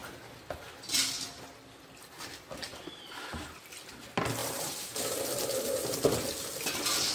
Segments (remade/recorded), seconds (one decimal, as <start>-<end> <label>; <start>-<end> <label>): 0.0-2.7 recorded; 2.7-3.5 remade; 3.5-4.4 recorded; 4.4-5.2 remade; 5.2-7.1 recorded